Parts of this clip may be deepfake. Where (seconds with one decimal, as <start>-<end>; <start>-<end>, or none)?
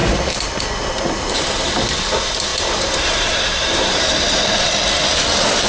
0.0-0.6; 2.5-4.7